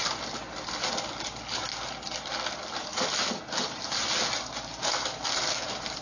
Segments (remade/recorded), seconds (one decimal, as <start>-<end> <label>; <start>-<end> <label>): 0.0-6.0 recorded

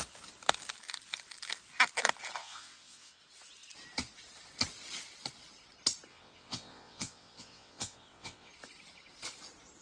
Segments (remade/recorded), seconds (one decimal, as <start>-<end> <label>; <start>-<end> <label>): 0.0-2.4 recorded; 2.4-3.2 remade; 3.2-6.1 recorded; 6.1-8.5 remade; 8.5-9.8 recorded

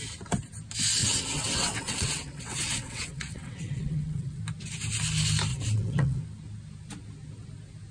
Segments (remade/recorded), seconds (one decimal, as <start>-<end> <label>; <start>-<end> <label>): 0.0-1.0 recorded; 1.0-4.4 remade; 4.4-5.5 recorded; 5.5-6.2 remade; 6.2-7.9 recorded

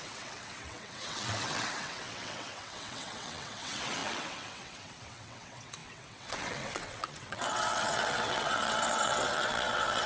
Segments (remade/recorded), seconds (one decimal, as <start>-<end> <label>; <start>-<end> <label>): 0.0-10.1 remade

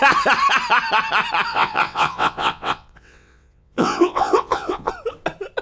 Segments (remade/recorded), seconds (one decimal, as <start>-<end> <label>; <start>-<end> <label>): 0.0-1.5 recorded; 1.5-4.9 remade; 4.9-5.6 recorded

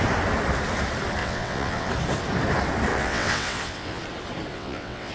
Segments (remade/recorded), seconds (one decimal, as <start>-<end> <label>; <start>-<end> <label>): 0.0-1.2 recorded; 1.2-1.9 remade; 1.9-2.9 recorded; 2.9-4.0 remade; 4.0-4.5 recorded; 4.5-5.1 remade

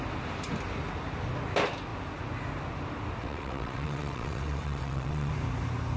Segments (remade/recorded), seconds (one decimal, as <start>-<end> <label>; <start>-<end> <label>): 0.0-3.2 recorded; 3.2-5.3 remade; 5.3-6.0 recorded

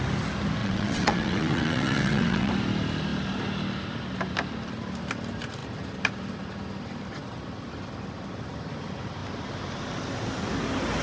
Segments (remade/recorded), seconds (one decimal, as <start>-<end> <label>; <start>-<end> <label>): 0.0-0.6 recorded; 0.6-2.5 remade; 2.5-11.0 recorded